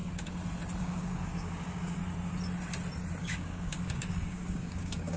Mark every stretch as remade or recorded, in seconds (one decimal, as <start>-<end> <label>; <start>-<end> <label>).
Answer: 0.0-0.8 recorded; 0.8-2.0 remade; 2.0-3.2 recorded; 3.2-5.2 remade